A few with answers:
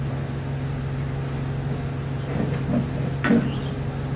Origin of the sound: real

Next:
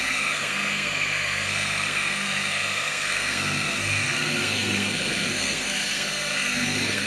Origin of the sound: fake